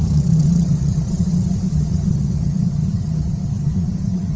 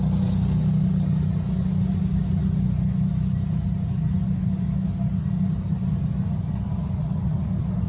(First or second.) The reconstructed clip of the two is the first